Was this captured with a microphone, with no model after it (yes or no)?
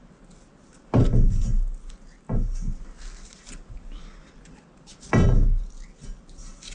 yes